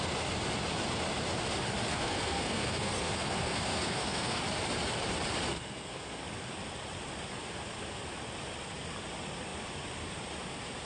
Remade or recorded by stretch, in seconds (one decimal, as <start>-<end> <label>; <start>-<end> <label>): 0.0-1.9 recorded; 1.9-4.4 remade; 4.4-5.5 recorded; 5.5-6.2 remade; 6.2-10.9 recorded